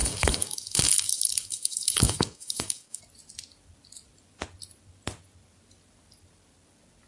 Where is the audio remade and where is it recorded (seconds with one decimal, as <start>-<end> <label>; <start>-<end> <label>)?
0.0-3.0 remade; 3.0-7.1 recorded